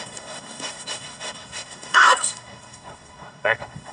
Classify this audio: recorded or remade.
remade